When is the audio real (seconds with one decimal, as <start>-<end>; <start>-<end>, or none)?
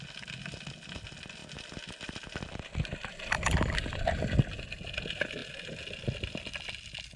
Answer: 0.0-7.2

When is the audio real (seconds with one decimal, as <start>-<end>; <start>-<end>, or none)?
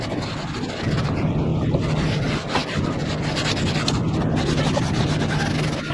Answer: 0.0-5.9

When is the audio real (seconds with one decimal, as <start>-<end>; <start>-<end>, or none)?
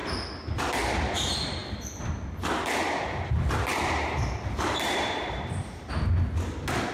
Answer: 0.0-3.7; 5.5-6.9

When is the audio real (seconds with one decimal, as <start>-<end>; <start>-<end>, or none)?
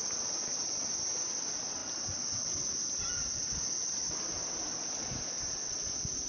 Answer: 0.0-6.3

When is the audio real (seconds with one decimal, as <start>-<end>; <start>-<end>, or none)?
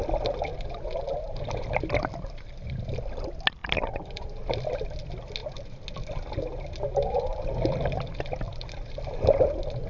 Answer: 0.0-0.5; 2.7-3.6; 4.2-9.9